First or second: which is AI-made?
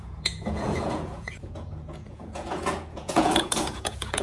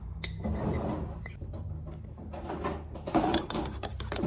first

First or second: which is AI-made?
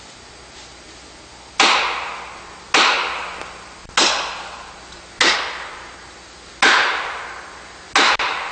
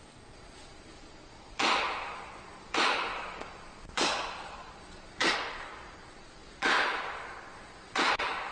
second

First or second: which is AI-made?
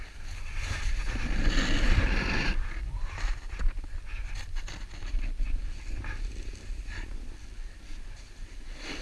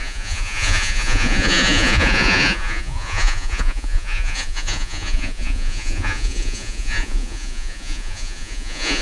second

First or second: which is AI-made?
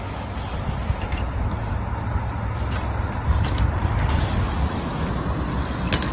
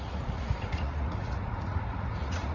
second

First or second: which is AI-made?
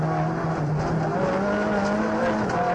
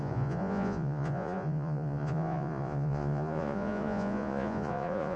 second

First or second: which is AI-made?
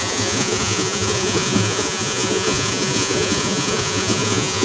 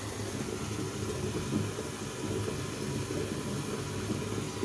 first